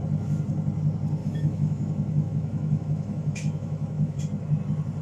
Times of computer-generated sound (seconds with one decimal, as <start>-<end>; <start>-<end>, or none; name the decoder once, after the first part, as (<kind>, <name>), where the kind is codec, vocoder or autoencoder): 1.2-4.2 (autoencoder, DAC-VAE)